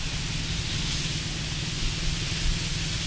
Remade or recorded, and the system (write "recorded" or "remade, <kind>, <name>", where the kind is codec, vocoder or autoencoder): recorded